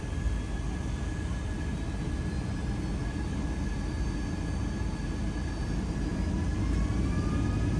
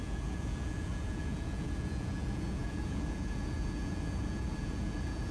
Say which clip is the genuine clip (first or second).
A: first